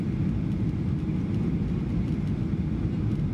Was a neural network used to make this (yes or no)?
no